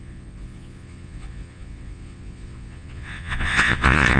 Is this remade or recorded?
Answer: remade